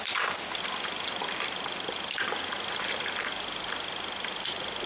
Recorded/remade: recorded